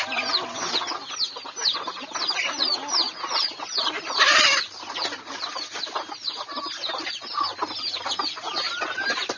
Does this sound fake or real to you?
real